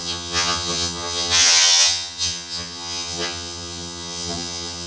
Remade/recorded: remade